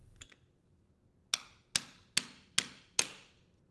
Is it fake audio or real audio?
real